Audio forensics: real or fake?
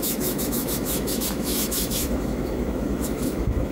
fake